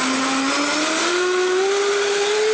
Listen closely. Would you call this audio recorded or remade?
recorded